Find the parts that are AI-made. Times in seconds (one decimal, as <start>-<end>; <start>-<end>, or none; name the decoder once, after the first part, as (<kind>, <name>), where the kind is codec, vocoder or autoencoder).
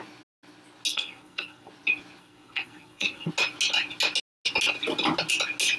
0.9-1.7 (codec, SNAC); 2.2-3.3